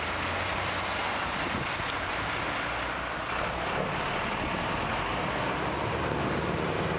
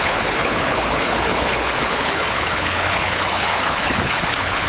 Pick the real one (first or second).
first